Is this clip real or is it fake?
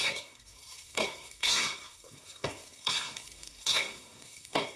fake